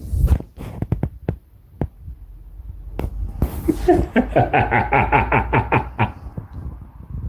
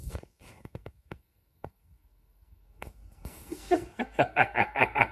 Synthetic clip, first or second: second